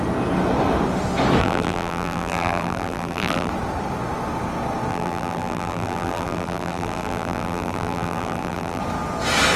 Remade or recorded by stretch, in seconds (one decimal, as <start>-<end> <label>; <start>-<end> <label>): 0.0-1.4 recorded; 1.4-3.5 remade; 3.5-4.9 recorded; 4.9-8.8 remade; 8.8-9.6 recorded